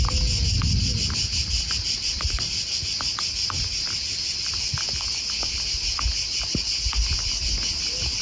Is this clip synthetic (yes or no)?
no